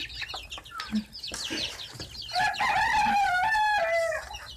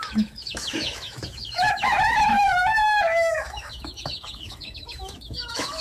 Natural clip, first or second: first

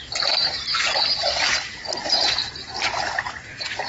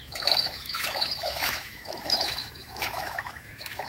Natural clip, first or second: first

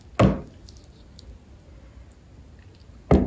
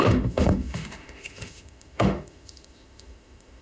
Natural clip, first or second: first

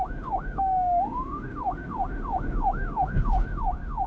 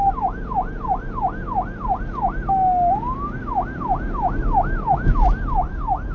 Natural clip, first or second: second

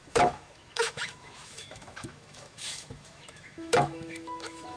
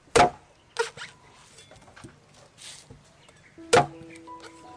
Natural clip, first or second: second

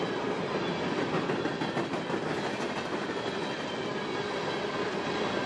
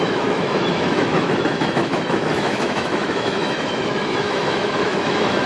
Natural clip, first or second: first